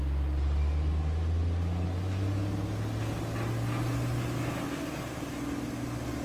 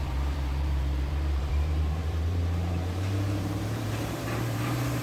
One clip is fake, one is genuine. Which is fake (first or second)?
second